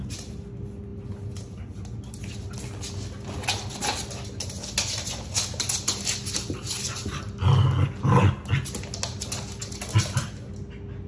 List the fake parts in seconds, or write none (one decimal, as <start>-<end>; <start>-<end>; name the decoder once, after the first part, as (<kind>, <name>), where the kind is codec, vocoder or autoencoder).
none